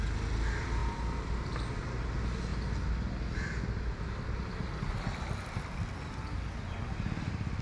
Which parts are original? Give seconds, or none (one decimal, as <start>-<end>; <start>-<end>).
0.0-7.6